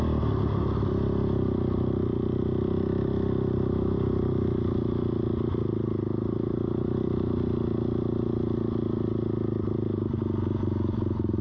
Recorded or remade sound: recorded